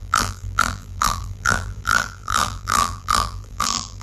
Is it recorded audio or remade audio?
remade